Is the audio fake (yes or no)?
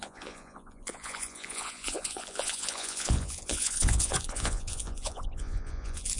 yes